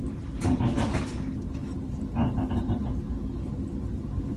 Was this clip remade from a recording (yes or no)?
no